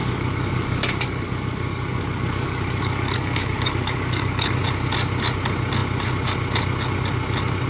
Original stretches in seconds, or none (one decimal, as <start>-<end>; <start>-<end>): 4.6-7.7